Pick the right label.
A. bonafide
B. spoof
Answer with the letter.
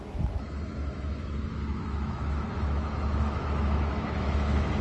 B